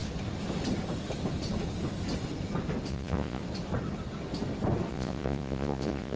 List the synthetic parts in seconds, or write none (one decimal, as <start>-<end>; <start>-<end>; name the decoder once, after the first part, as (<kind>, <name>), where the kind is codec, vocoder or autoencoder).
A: 2.9-3.4 (vocoder, Vocos); 4.9-6.2